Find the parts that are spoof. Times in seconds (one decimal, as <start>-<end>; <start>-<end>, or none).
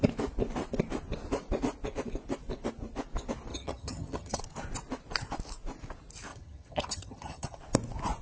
3.5-4.4; 6.3-7.6